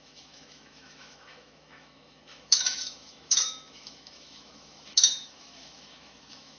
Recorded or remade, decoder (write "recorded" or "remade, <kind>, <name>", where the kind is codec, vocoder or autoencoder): remade, autoencoder, DAC-VAE